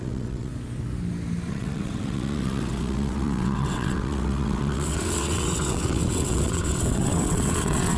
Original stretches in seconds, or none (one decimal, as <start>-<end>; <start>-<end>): 0.5-1.5